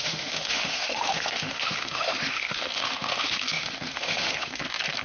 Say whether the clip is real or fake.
fake